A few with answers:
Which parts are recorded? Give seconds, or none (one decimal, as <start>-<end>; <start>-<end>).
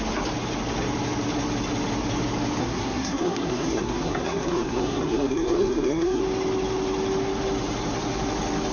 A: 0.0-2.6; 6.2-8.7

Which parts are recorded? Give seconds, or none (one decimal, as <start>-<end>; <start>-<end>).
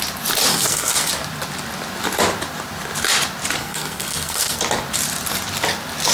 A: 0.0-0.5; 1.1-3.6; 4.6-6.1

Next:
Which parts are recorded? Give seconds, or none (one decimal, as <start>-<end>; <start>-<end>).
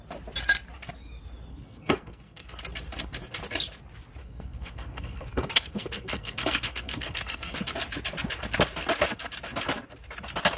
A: 0.0-1.5; 2.6-4.2; 7.6-10.6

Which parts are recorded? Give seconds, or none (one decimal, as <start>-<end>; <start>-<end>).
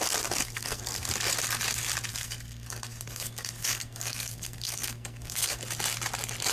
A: 0.0-0.4; 1.1-2.1; 5.6-6.5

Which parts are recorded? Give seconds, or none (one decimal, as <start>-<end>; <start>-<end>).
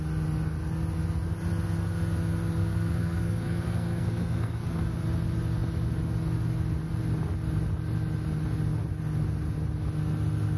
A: 0.0-2.6; 4.8-10.6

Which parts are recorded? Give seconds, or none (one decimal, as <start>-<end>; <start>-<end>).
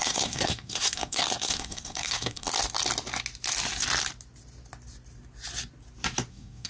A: 2.5-6.3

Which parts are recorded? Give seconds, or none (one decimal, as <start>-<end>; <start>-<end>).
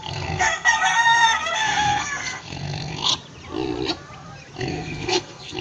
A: 3.1-4.6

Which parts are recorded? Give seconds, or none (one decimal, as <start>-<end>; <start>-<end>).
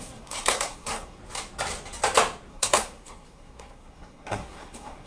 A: 1.2-2.5